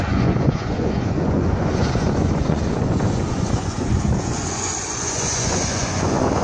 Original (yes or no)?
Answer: no